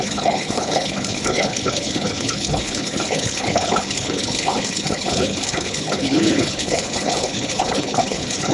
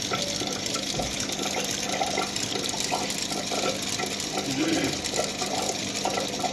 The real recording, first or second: second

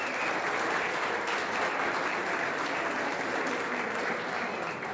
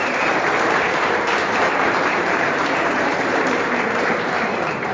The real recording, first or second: first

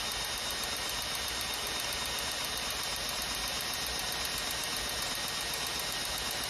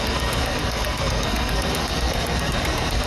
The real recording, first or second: first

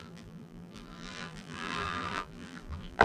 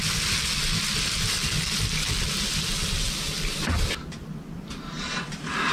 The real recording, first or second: second